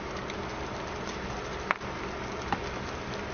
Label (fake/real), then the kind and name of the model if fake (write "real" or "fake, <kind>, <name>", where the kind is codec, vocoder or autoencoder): real